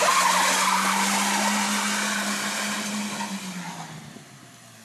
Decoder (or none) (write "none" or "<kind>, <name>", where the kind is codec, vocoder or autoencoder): none